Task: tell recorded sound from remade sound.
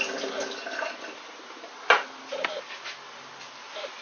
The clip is recorded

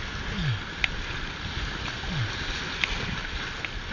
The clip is recorded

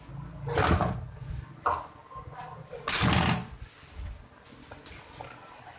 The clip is recorded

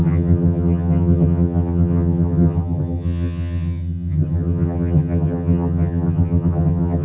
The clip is remade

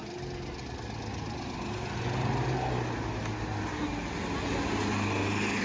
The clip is recorded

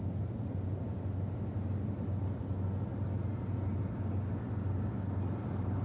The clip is recorded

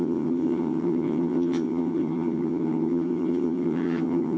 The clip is remade